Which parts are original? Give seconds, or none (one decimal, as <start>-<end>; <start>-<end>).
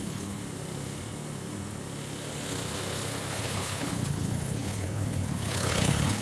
0.4-3.3